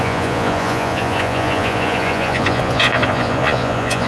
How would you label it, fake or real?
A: fake